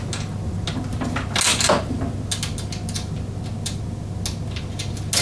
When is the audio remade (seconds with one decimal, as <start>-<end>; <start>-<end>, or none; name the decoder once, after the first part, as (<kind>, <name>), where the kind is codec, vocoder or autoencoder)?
none